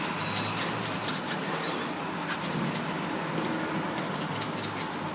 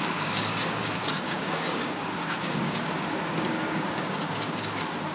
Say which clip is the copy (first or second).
second